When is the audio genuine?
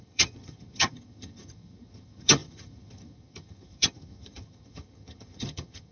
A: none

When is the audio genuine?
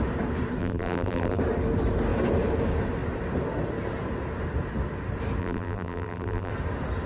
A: 0.0-0.6; 1.4-5.4; 6.5-7.1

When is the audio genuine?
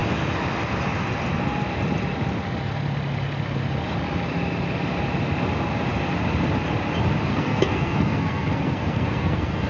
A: 0.0-7.3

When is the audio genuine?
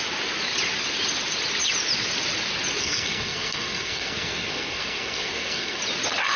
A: 0.0-2.8; 5.8-6.4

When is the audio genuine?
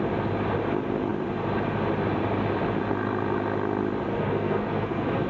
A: 0.0-4.1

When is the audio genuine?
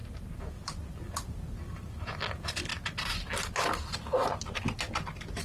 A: 2.7-5.4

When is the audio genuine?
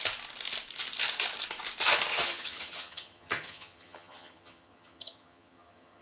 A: 0.0-2.1